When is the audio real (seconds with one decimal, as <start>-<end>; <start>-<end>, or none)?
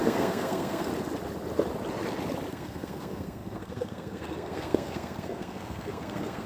0.9-2.5